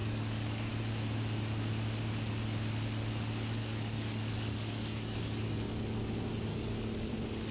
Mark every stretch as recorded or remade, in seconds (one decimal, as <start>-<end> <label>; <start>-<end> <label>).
0.0-0.7 remade; 0.7-3.6 recorded; 3.6-6.1 remade; 6.1-6.5 recorded; 6.5-7.1 remade; 7.1-7.5 recorded